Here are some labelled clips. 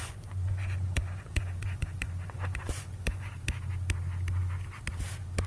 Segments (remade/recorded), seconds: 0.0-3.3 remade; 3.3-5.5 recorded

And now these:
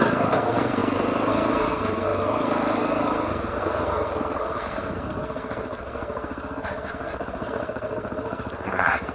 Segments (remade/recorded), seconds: 0.0-9.1 remade

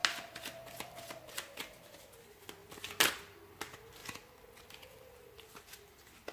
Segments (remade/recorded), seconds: 0.0-6.3 recorded

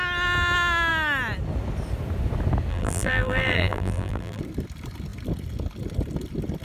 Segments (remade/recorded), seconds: 0.0-2.7 recorded; 2.7-4.4 remade; 4.4-6.6 recorded

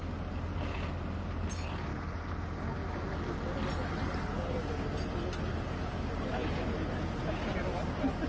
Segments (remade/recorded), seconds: 0.0-8.3 recorded

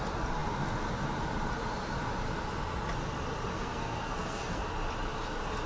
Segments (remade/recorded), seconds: 0.0-3.5 recorded; 3.5-4.6 remade; 4.6-5.7 recorded

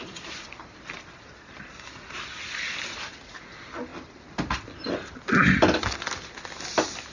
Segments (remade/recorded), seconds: 0.0-7.1 recorded